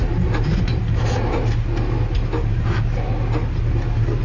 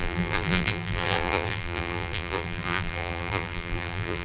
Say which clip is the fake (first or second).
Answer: second